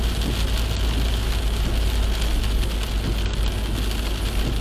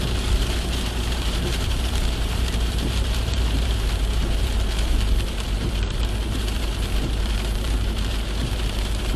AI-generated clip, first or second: second